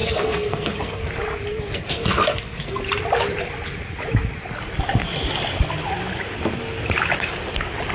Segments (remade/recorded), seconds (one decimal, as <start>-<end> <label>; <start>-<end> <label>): 0.0-1.1 remade; 1.1-1.5 recorded; 1.5-2.8 remade; 2.8-7.9 recorded